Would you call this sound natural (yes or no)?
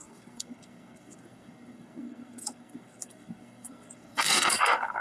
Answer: no